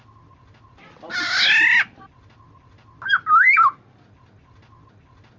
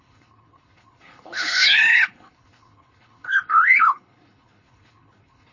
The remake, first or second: second